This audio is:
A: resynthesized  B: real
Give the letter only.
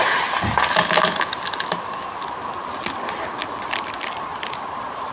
B